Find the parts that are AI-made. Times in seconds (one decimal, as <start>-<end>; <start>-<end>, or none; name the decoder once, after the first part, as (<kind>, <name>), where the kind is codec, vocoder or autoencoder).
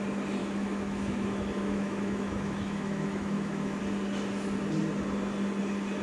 0.4-3.8 (autoencoder, DAC-VAE)